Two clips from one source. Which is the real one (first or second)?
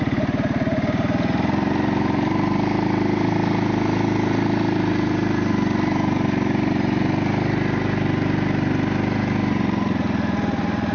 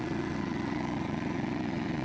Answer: first